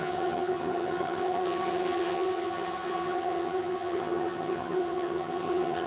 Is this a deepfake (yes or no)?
yes